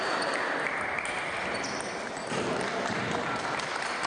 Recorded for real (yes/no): no